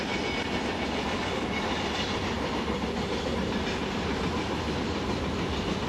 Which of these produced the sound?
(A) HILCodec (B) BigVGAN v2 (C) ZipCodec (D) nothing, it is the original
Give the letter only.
D